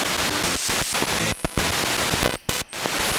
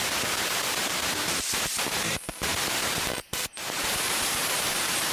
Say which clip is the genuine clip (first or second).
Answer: first